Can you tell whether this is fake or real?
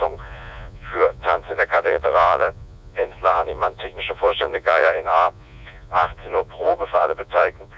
fake